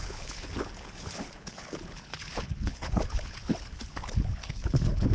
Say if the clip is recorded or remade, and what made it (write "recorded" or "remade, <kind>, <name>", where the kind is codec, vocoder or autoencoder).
remade, codec, HILCodec